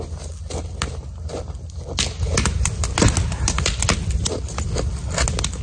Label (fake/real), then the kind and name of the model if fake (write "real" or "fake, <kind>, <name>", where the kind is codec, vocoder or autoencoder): real